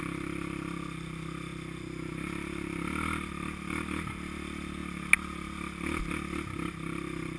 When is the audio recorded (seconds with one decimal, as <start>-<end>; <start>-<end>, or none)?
0.0-7.4